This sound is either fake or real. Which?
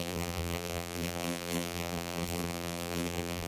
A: fake